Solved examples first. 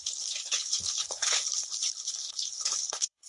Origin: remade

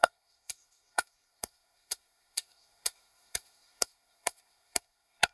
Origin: remade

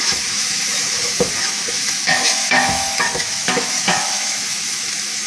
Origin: remade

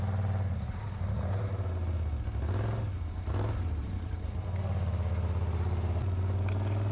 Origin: recorded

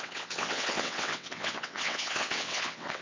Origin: remade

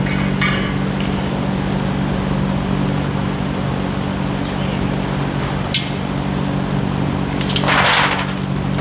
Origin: recorded